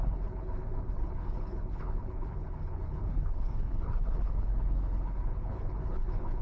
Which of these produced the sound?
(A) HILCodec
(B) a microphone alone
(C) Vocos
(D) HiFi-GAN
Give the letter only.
A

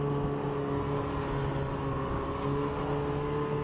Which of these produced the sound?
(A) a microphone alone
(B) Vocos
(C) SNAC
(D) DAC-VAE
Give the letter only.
A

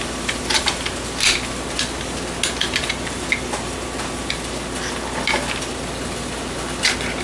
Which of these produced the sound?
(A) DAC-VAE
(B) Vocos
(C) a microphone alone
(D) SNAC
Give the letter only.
C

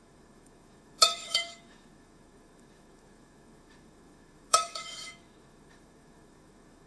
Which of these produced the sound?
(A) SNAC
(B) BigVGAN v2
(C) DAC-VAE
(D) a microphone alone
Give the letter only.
C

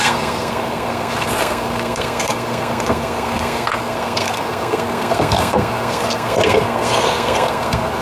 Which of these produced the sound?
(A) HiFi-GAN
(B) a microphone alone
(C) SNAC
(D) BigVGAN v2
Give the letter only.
C